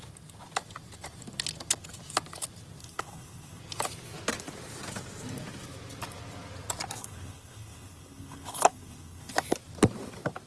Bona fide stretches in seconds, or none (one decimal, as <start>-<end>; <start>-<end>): 0.0-2.8; 3.6-7.0; 9.3-10.5